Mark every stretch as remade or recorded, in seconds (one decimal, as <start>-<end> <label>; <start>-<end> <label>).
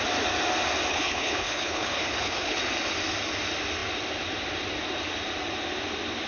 0.0-0.9 recorded; 0.9-2.6 remade; 2.6-6.3 recorded